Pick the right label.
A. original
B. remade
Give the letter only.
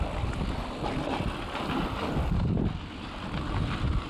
A